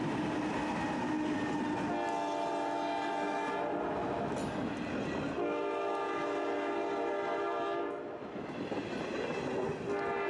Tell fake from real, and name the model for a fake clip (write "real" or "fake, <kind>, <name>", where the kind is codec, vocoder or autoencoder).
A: real